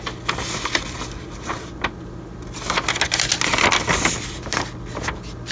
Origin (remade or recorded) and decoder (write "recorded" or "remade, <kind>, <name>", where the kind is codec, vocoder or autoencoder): recorded